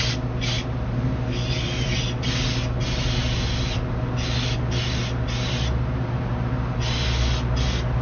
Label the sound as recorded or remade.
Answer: recorded